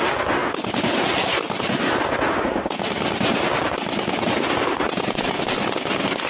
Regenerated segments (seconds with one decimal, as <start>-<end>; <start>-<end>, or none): 3.5-5.4